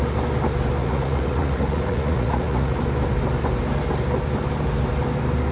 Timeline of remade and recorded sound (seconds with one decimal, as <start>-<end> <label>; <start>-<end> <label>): 0.0-0.8 recorded; 0.8-2.8 remade; 2.8-5.5 recorded